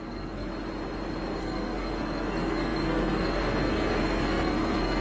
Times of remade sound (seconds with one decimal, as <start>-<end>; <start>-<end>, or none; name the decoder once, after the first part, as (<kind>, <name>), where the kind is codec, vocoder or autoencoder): 0.0-0.5 (codec, SNAC); 1.4-5.0